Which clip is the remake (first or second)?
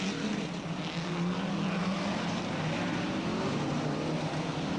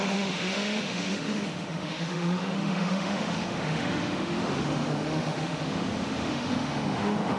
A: second